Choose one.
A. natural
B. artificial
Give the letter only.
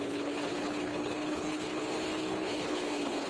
B